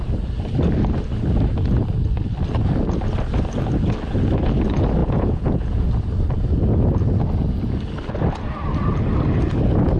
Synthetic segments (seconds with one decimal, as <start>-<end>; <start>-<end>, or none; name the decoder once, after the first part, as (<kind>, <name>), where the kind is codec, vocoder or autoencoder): 5.0-5.9 (vocoder, Vocos)